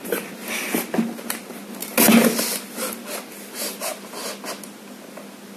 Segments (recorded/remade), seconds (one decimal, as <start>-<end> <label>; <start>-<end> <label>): 0.0-5.6 recorded